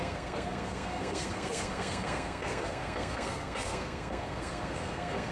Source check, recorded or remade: remade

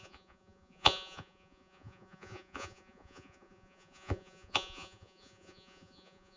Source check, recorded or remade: remade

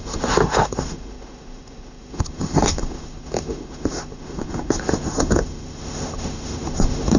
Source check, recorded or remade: remade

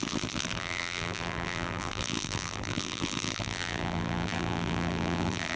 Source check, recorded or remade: remade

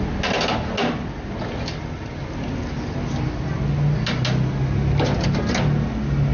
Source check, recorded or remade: recorded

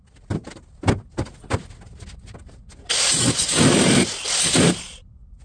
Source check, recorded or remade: recorded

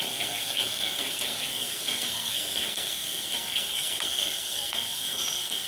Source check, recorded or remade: remade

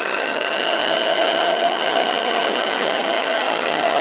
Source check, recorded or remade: remade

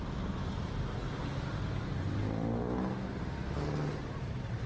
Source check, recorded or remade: recorded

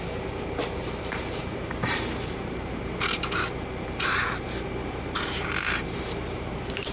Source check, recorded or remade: remade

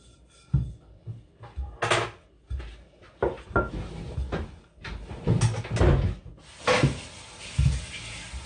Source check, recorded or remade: recorded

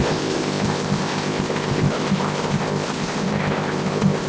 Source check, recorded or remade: remade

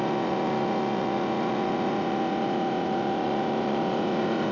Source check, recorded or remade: remade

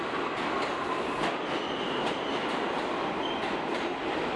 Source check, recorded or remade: recorded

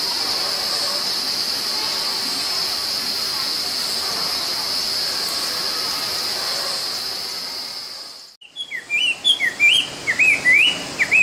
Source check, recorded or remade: recorded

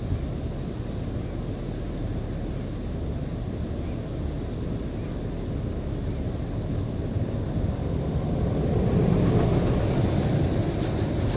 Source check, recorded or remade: recorded